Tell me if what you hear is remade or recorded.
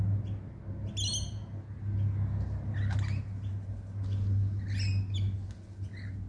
recorded